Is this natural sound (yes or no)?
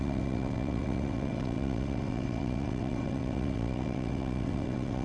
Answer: no